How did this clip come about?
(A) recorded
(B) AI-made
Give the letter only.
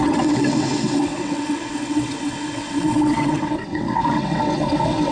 B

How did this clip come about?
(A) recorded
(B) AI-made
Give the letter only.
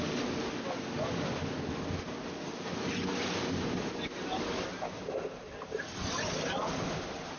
A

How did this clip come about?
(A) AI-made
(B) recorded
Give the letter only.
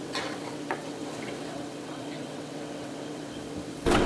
A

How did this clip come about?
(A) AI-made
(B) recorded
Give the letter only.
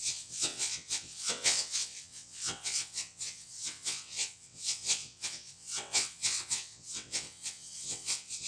A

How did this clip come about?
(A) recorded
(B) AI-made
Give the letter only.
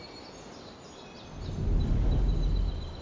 A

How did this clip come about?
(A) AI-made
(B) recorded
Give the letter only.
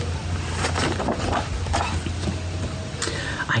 B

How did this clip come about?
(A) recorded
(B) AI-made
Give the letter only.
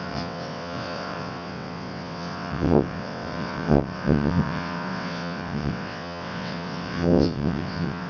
B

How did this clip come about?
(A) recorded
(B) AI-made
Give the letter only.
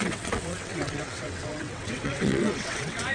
B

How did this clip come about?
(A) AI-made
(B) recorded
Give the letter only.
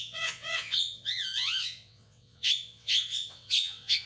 A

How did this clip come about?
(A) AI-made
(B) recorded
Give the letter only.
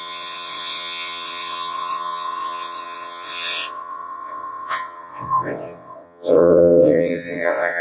A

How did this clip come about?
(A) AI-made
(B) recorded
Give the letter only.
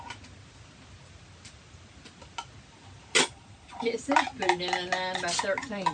B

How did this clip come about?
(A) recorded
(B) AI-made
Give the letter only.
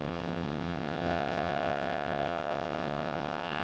B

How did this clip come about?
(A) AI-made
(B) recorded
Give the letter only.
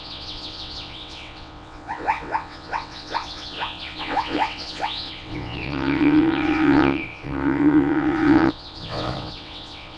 A